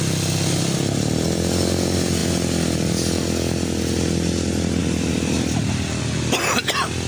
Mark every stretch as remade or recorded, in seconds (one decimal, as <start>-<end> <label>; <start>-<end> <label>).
0.0-7.1 recorded